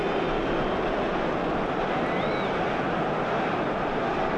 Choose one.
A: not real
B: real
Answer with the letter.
B